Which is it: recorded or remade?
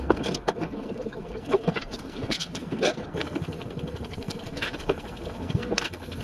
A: remade